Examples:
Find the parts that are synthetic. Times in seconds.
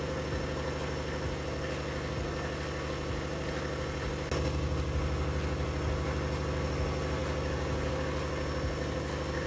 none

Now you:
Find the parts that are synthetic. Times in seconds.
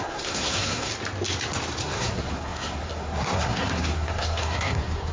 0.0-0.9 (codec, SNAC); 1.8-5.1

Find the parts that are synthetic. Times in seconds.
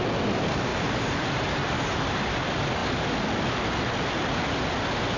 0.7-2.2 (vocoder, BigVGAN v2)